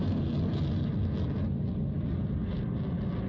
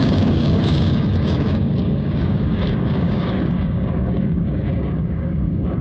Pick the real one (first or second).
first